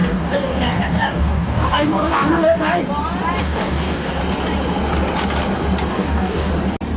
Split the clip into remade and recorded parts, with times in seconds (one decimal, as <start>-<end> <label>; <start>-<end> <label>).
0.0-2.8 remade; 2.8-3.4 recorded; 3.4-4.2 remade; 4.2-5.9 recorded; 5.9-6.5 remade; 6.5-7.0 recorded